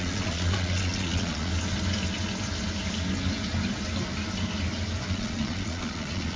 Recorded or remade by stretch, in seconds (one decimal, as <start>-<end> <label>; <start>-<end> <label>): 0.0-1.5 remade; 1.5-5.1 recorded; 5.1-6.4 remade